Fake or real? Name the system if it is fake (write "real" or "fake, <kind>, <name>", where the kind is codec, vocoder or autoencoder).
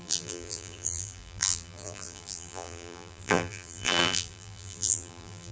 fake, vocoder, BigVGAN v2